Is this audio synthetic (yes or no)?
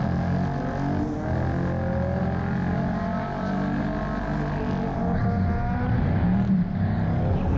no